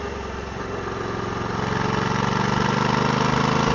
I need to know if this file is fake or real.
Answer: real